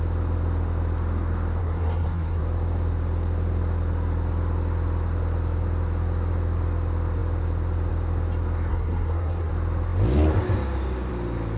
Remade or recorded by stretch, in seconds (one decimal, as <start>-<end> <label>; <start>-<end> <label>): 0.0-1.6 recorded; 1.6-2.4 remade; 2.4-8.7 recorded; 8.7-9.5 remade; 9.5-11.6 recorded